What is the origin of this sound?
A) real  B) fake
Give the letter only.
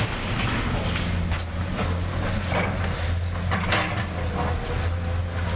A